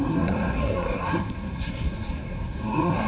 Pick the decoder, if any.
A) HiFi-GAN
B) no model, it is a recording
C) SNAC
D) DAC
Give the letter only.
C